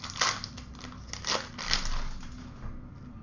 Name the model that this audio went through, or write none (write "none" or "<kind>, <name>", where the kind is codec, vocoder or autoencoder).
none